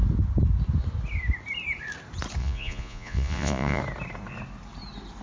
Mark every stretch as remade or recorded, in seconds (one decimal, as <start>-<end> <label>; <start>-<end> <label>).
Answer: 0.0-2.4 recorded; 2.4-3.8 remade; 3.8-5.2 recorded

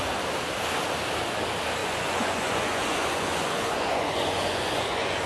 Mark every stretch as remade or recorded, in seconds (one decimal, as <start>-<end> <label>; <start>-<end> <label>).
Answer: 0.0-1.8 recorded; 1.8-5.3 remade